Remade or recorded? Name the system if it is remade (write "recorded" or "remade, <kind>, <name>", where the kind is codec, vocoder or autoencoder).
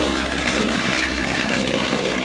remade, codec, SNAC